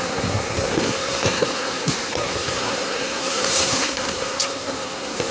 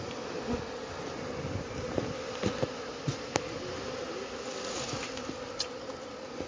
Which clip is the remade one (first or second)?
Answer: first